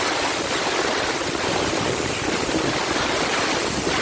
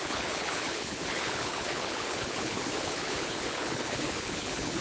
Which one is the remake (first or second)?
second